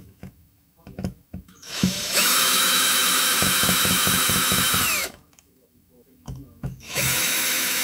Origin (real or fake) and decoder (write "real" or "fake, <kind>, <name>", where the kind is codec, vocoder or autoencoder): fake, autoencoder, DAC-VAE